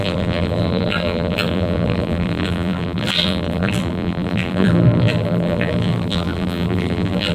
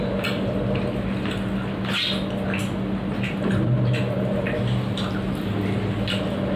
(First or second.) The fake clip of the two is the first